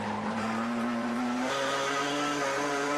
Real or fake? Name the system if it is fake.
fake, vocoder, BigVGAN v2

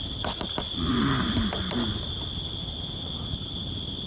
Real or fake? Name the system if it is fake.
real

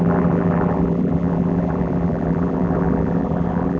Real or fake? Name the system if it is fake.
fake, vocoder, BigVGAN v2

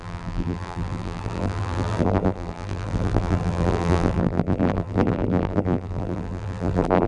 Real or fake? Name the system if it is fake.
fake, vocoder, BigVGAN v2